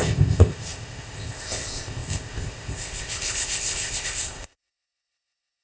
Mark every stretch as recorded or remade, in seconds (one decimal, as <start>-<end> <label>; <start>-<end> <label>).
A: 0.0-5.6 remade